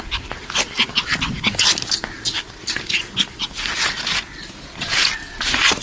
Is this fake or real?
real